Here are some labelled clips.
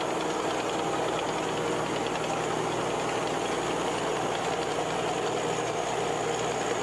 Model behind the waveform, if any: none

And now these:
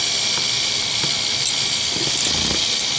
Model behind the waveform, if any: none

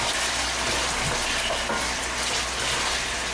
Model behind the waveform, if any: none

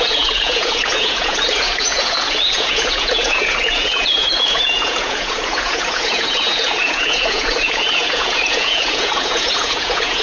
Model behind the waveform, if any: vocoder, Vocos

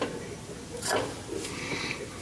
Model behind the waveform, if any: none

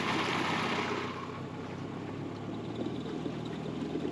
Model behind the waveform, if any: none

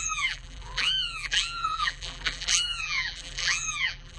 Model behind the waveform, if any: vocoder, BigVGAN v2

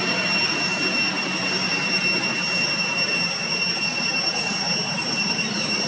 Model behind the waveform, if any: none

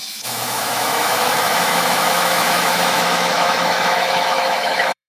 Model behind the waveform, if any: autoencoder, DAC-VAE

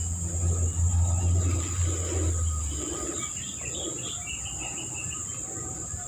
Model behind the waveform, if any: none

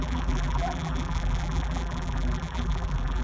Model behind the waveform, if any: vocoder, BigVGAN v2